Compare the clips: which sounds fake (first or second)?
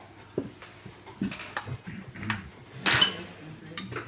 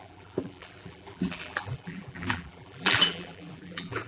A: second